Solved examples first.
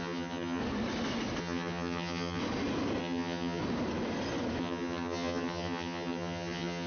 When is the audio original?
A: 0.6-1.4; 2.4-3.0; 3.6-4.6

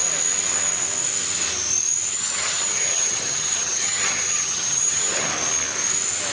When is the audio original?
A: 0.0-2.1; 5.3-6.3

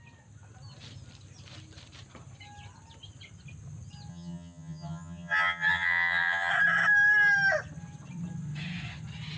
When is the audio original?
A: 0.0-4.1; 6.5-9.4

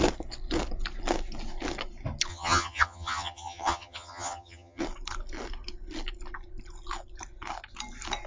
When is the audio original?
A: 0.0-2.3; 4.8-8.3

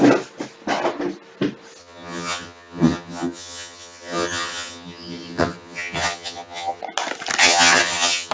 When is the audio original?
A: 0.0-1.8; 6.8-7.4